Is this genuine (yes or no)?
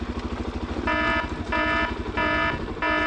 yes